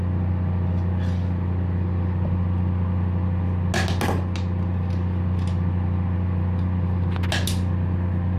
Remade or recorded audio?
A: recorded